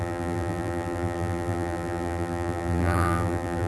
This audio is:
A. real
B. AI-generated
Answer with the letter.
B